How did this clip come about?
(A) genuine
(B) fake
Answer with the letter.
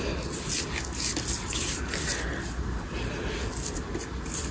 A